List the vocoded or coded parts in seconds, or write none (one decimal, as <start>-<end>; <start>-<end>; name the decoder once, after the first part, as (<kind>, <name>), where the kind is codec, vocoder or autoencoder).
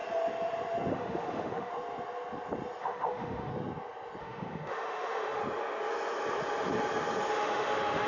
0.9-1.7 (autoencoder, DAC-VAE); 2.8-3.5; 4.2-5.4; 7.3-8.1